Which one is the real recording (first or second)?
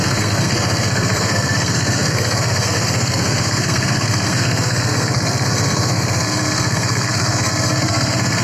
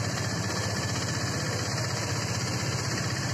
second